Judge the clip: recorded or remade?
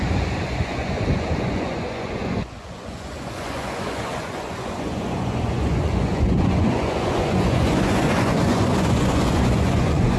remade